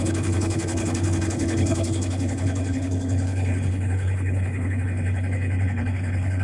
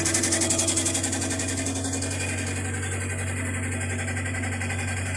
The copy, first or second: first